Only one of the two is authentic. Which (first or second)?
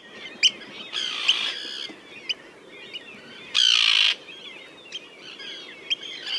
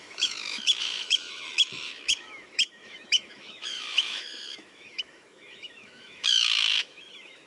first